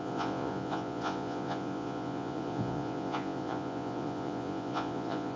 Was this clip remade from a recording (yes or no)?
yes